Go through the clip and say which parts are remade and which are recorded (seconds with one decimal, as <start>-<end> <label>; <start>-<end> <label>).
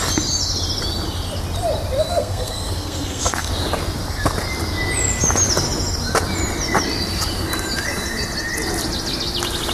0.0-2.2 recorded; 2.2-3.5 remade; 3.5-9.7 recorded